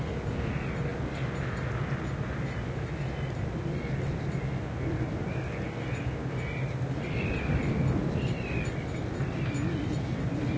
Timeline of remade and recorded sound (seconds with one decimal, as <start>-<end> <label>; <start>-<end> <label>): 0.0-10.6 recorded